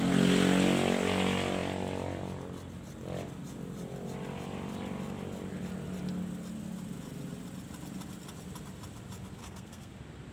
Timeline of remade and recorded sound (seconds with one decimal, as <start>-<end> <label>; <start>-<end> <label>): 0.0-9.4 recorded; 9.4-9.9 remade; 9.9-10.3 recorded